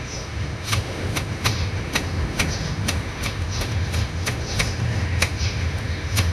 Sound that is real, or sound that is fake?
fake